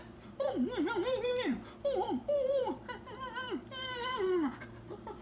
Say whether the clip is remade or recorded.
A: remade